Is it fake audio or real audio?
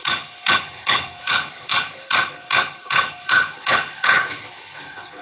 fake